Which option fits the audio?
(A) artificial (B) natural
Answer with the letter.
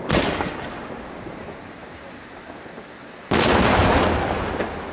B